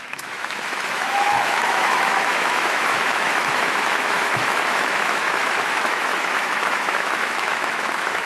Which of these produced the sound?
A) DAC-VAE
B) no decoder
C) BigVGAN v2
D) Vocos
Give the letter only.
A